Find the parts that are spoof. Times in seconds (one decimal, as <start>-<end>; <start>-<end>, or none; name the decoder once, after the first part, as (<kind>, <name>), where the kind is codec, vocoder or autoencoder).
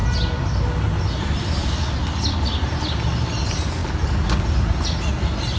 none